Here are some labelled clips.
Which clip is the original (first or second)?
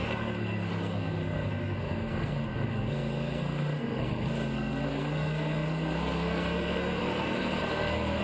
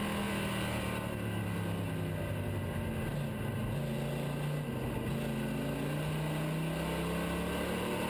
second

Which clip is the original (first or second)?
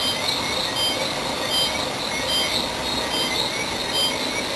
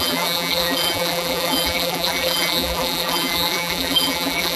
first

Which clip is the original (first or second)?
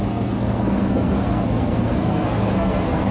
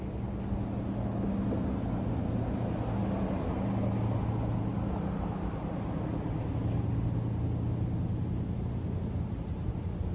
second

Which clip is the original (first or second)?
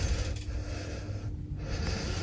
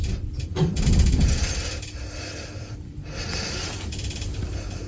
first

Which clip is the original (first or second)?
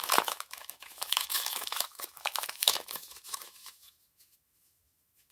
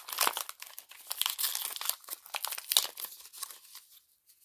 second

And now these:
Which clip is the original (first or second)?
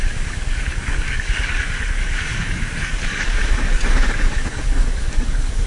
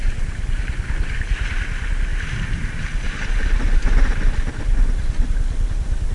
second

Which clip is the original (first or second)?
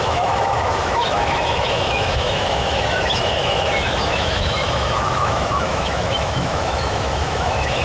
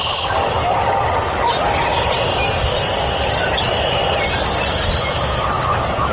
second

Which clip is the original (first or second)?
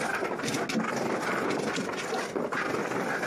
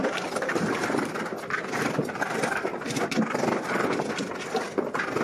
first